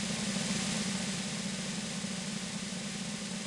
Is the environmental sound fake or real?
real